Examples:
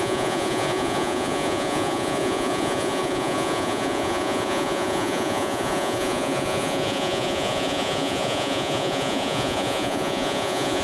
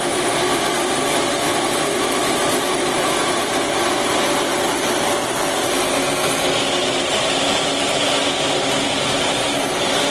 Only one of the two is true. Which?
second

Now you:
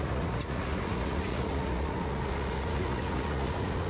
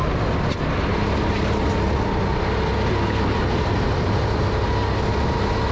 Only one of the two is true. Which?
second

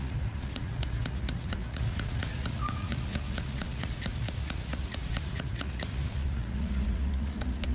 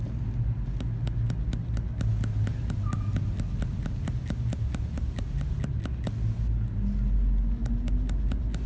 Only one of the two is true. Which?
second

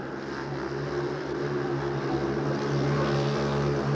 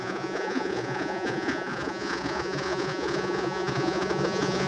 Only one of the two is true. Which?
first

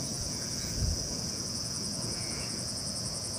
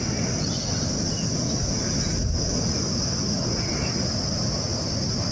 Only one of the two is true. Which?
second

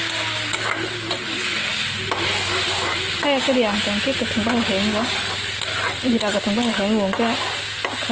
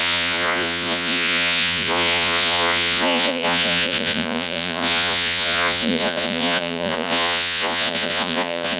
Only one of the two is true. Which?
first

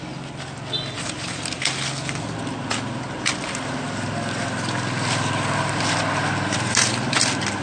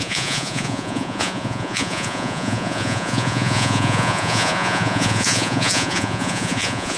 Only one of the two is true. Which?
first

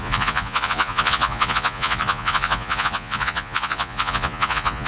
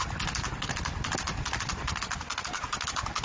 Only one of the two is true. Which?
second